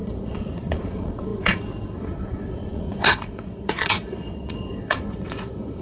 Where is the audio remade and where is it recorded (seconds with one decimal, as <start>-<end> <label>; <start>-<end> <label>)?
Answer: 0.0-5.8 remade